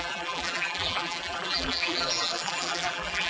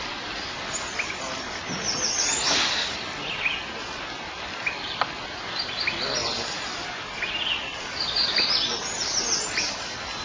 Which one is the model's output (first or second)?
first